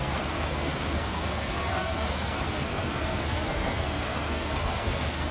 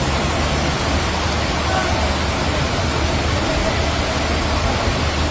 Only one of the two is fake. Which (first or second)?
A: first